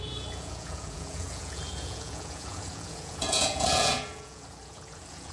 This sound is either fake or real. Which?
fake